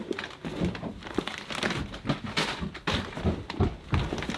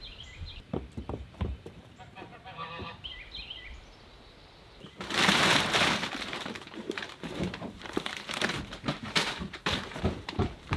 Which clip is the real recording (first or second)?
first